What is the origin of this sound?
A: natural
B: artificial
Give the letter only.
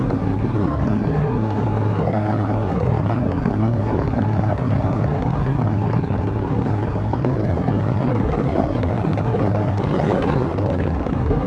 B